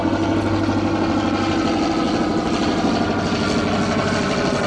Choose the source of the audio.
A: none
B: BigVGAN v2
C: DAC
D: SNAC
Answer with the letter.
A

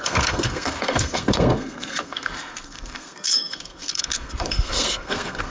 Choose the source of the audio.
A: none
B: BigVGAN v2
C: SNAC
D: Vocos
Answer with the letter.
C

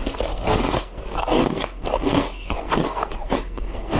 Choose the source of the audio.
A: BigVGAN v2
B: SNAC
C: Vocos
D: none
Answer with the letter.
B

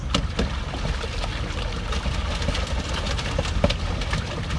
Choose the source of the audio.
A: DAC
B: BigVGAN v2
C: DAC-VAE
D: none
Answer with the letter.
D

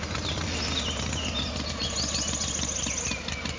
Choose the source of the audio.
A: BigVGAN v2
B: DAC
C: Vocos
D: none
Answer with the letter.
D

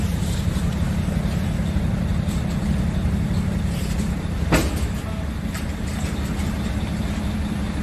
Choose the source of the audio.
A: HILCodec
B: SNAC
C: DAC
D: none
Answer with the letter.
D